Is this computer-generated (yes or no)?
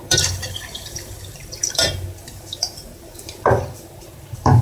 yes